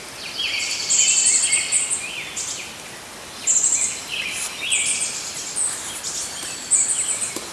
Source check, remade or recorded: recorded